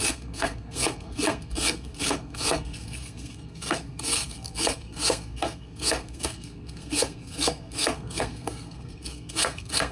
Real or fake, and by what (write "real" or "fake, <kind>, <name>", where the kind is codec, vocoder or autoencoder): fake, codec, SNAC